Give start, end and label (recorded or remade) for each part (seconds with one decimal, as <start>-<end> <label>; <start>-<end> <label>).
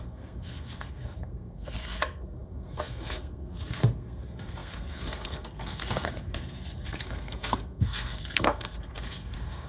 0.0-9.7 remade